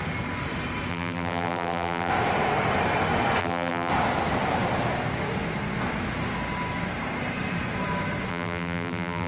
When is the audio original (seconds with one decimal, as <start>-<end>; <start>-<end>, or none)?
0.0-0.9; 2.1-3.4; 3.9-8.3